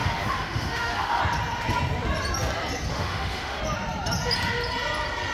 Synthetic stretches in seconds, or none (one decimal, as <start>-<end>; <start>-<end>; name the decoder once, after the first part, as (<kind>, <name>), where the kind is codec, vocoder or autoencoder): 0.0-1.2 (autoencoder, DAC-VAE); 2.9-3.6

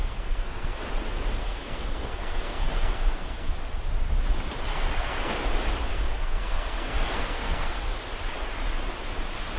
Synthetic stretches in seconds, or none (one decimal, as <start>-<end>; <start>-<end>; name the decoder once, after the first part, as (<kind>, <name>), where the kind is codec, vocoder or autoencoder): 0.0-0.8 (codec, SNAC); 1.4-3.5; 4.7-5.3; 5.9-7.8

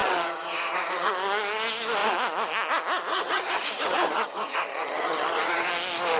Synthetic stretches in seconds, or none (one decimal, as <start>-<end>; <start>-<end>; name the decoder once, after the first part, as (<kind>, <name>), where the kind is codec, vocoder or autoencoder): 0.0-1.1 (vocoder, HiFi-GAN); 3.1-5.7

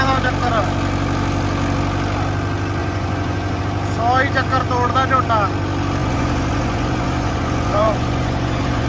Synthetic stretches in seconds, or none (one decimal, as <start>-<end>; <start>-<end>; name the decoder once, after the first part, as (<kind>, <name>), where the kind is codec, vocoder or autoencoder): 2.8-3.6 (vocoder, Vocos); 6.0-8.9

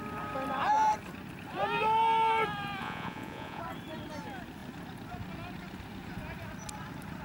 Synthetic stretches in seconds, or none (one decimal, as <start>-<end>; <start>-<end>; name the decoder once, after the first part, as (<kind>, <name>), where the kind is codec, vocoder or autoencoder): 2.8-3.6 (vocoder, Vocos)

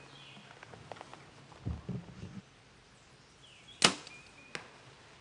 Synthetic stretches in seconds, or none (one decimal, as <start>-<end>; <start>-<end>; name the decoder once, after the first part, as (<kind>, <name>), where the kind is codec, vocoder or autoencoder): none

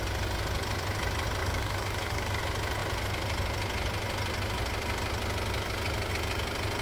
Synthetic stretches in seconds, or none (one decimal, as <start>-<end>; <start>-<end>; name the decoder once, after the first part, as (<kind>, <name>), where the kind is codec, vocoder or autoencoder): 1.4-2.4 (codec, DAC)

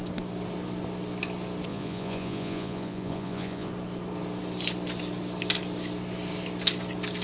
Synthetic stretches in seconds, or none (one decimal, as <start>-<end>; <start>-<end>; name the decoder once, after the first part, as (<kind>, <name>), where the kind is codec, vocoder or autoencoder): 1.7-3.7 (vocoder, Vocos)